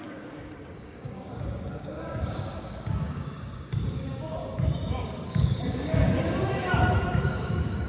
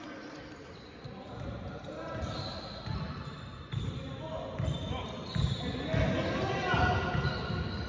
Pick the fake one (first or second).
first